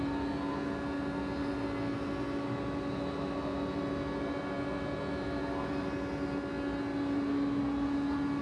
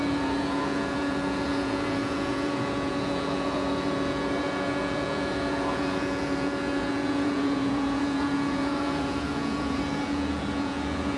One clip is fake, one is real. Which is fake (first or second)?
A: second